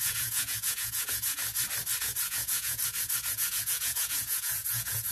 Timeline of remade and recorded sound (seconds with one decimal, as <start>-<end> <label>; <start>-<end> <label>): 0.0-1.4 remade; 1.4-2.0 recorded; 2.0-2.8 remade; 2.8-3.3 recorded; 3.3-5.1 remade